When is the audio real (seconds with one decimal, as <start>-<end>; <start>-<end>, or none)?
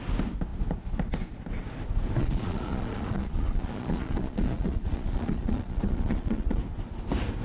0.0-2.2; 6.6-7.4